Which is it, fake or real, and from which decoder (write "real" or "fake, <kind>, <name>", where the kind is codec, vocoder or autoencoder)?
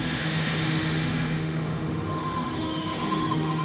fake, autoencoder, DAC-VAE